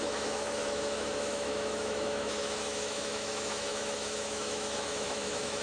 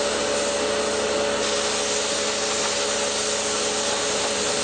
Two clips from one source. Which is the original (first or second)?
second